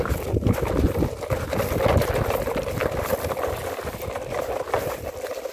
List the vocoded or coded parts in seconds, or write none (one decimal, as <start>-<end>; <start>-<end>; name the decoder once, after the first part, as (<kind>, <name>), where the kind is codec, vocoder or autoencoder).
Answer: 2.8-3.5 (vocoder, BigVGAN v2)